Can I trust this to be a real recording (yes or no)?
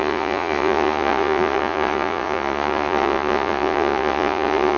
no